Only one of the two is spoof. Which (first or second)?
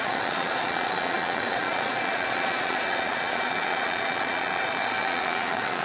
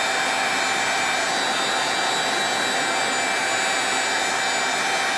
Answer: first